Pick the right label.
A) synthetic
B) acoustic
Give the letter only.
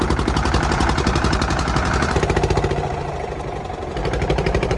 A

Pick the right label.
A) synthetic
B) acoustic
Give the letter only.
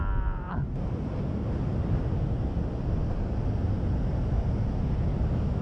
B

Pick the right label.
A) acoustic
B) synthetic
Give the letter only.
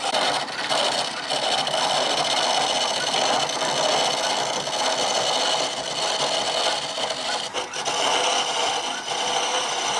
A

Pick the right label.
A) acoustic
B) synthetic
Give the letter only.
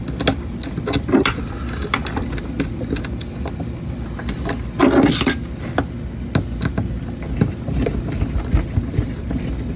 A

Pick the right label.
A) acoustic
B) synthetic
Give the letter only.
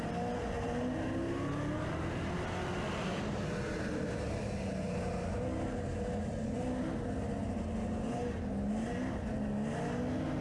A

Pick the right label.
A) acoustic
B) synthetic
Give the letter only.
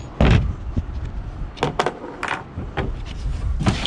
A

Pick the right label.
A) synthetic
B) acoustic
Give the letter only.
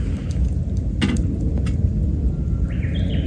B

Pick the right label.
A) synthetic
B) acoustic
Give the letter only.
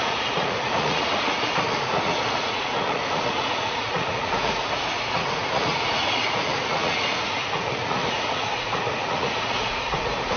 A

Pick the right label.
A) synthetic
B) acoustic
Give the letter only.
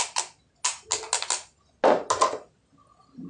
B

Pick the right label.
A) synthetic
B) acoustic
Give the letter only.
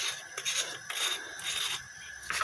B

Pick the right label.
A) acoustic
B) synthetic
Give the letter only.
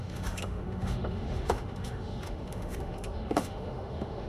B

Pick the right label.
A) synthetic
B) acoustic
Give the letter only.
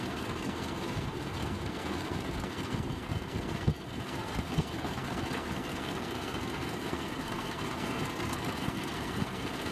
A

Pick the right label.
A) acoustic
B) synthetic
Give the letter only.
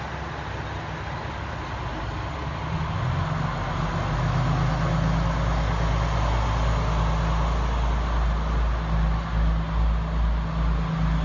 A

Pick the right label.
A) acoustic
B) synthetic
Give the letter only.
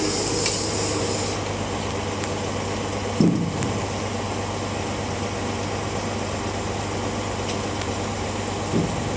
A